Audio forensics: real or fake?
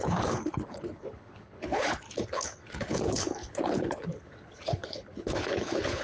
fake